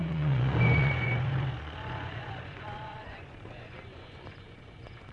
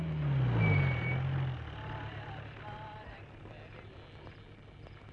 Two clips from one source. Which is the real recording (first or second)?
second